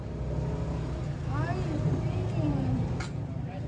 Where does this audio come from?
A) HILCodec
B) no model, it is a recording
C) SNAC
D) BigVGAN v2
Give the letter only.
B